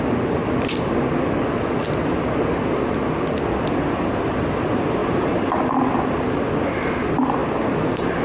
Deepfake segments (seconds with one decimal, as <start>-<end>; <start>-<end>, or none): 5.0-5.6; 7.4-8.2